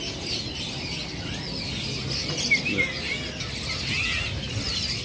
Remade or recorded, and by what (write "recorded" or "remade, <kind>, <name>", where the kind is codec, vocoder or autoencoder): recorded